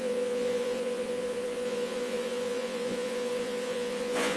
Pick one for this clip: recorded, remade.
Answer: remade